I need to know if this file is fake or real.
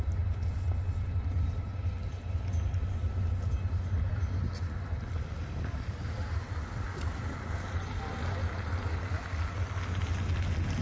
real